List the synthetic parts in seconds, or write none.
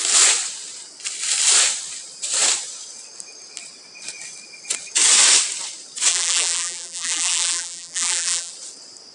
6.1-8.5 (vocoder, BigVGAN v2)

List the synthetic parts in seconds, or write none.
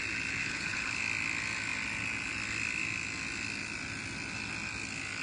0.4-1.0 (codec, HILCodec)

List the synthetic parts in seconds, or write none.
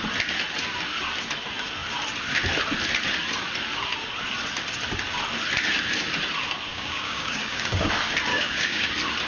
6.7-7.9 (codec, DAC); 8.3-8.9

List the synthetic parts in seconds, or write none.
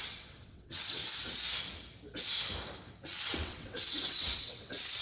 0.0-1.0 (vocoder, WaveNeXt); 3.0-5.0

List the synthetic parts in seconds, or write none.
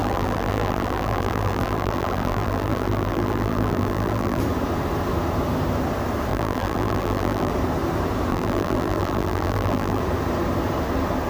0.0-4.4 (vocoder, BigVGAN v2); 6.3-7.5; 8.3-10.0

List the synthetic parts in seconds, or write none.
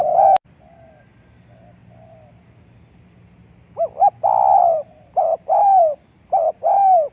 4.6-7.1 (vocoder, BigVGAN v2)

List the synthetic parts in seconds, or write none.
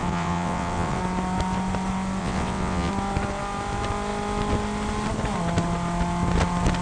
0.0-1.0 (vocoder, WaveNeXt); 2.2-2.9